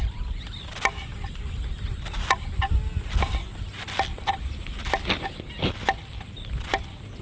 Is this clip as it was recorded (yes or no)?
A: yes